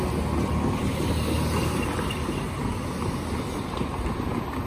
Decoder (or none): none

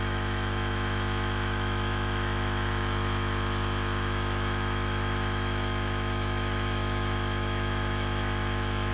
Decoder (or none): autoencoder, DAC-VAE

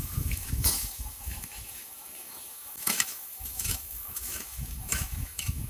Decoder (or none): autoencoder, DAC-VAE